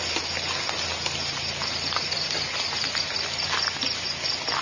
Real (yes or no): yes